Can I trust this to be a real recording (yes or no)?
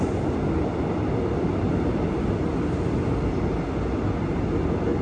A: yes